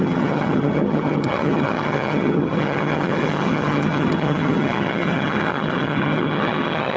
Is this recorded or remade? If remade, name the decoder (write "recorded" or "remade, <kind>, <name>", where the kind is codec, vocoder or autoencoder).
remade, vocoder, HiFi-GAN